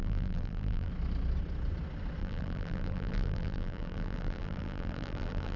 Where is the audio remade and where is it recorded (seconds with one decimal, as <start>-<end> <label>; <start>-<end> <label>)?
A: 0.0-0.9 remade; 0.9-2.2 recorded; 2.2-5.6 remade